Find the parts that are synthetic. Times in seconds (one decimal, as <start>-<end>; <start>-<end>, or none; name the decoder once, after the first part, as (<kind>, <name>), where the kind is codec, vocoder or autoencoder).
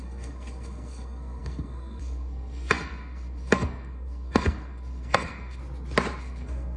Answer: 0.0-5.6 (codec, SNAC); 6.2-6.8